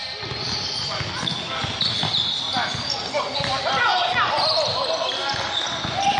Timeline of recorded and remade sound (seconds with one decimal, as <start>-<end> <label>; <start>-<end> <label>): 0.0-6.2 recorded